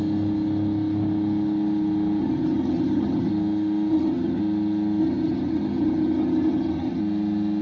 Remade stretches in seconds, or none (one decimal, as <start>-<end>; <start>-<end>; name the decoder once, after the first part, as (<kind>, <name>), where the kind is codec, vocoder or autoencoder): 2.2-3.3 (vocoder, HiFi-GAN); 3.9-4.4; 5.0-7.0